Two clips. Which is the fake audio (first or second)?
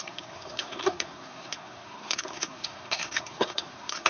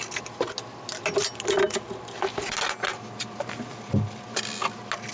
first